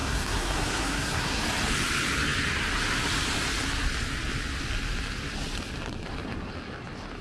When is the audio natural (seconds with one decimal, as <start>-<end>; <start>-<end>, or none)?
1.4-7.2